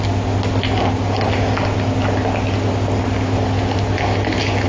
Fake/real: real